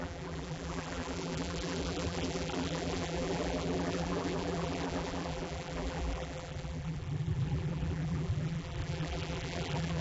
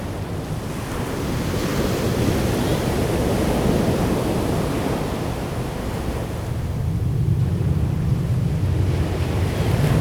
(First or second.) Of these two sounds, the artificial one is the first